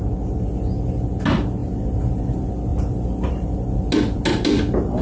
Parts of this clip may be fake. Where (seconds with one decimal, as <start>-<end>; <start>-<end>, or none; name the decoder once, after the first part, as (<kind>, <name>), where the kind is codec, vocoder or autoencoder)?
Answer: none